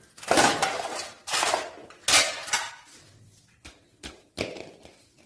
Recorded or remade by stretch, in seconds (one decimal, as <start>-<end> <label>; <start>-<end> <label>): 0.0-5.3 recorded